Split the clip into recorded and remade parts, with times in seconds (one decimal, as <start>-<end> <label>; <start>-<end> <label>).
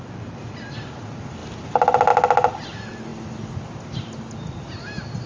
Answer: 0.0-5.3 recorded